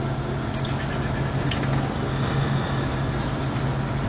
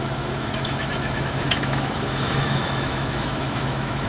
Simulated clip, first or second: second